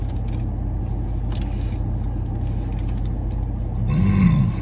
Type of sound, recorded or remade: recorded